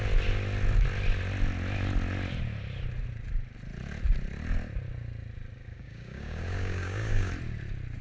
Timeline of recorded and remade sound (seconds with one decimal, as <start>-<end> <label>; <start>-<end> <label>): 0.0-5.7 recorded; 5.7-7.3 remade; 7.3-8.0 recorded